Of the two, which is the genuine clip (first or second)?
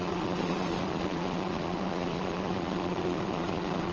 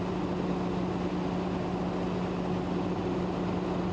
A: second